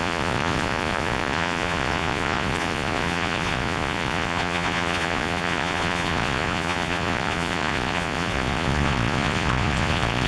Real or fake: fake